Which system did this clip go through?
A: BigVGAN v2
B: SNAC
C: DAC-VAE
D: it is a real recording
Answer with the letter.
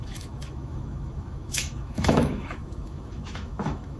C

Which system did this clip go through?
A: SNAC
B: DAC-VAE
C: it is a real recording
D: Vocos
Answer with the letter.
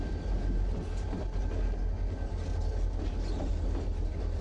C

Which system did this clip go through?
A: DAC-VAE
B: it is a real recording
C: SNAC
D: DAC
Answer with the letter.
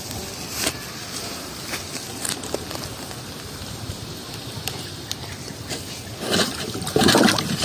B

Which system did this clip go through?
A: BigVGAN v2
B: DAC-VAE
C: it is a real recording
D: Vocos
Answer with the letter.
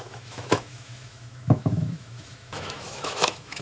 B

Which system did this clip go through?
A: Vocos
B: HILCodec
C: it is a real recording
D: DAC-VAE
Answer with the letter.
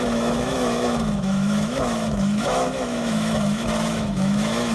D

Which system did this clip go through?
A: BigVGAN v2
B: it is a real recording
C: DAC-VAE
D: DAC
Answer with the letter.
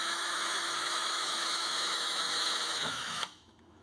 C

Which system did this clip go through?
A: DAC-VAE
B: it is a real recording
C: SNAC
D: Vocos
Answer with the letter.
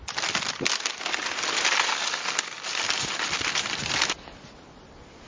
B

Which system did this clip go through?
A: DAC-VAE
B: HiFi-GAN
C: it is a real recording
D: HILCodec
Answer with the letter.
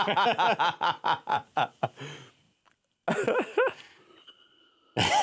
C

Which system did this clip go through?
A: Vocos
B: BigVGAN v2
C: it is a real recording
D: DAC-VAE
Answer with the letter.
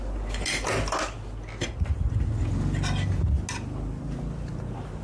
C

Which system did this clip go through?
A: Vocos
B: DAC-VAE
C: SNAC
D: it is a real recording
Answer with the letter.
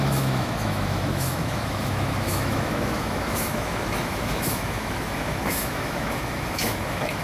B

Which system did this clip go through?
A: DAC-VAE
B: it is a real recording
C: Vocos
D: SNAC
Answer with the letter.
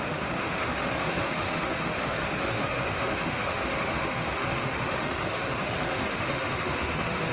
A